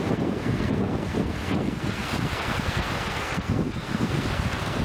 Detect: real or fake fake